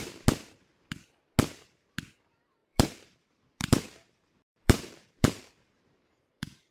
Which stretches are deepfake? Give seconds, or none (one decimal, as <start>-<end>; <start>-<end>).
2.6-6.7